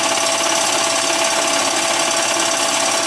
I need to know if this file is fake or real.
real